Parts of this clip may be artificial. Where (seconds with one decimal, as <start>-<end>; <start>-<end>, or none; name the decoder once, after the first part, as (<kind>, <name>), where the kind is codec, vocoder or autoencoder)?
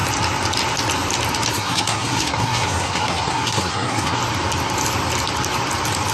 1.5-4.2 (codec, SNAC)